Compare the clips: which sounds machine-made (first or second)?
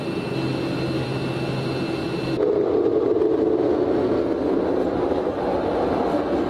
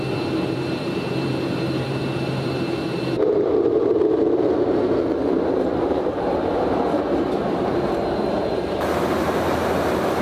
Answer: second